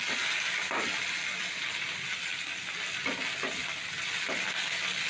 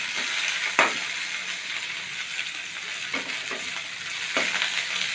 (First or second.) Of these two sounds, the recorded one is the second